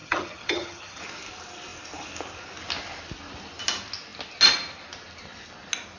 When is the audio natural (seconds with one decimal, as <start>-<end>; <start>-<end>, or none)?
1.0-6.0